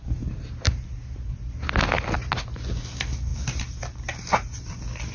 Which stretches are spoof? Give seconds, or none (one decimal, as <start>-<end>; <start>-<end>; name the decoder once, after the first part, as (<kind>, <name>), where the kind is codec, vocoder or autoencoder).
none